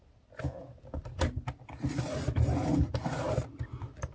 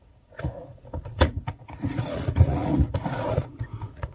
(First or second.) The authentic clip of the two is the first